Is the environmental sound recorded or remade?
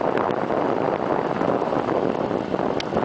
recorded